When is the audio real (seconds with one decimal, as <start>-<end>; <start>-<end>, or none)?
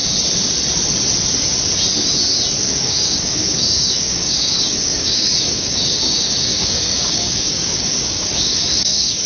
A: 0.0-2.6